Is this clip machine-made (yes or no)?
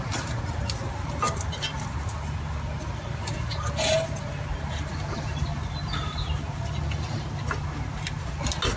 no